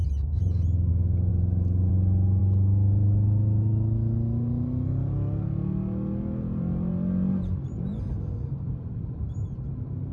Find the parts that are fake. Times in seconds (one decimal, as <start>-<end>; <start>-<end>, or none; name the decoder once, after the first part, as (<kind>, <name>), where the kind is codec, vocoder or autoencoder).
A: 1.3-1.9 (autoencoder, DAC-VAE)